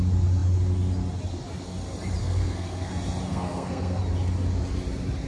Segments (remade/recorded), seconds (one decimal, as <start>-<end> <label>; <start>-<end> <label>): 0.0-2.2 recorded; 2.2-2.9 remade; 2.9-3.3 recorded; 3.3-4.0 remade; 4.0-5.3 recorded

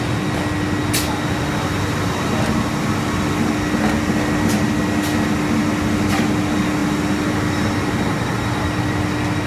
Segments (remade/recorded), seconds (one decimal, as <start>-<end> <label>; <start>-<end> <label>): 0.0-9.5 recorded

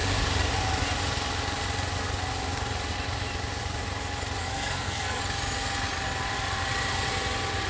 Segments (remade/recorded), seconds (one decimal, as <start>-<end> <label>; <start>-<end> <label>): 0.0-4.4 recorded; 4.4-5.2 remade; 5.2-7.7 recorded

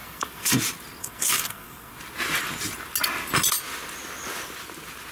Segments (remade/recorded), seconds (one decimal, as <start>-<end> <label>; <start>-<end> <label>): 0.0-0.5 remade; 0.5-1.0 recorded; 1.0-1.9 remade; 1.9-5.1 recorded

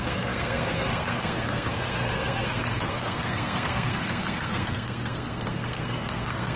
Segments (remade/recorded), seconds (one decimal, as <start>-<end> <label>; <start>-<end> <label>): 0.0-6.6 remade